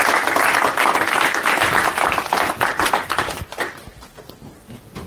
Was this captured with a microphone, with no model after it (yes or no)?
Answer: yes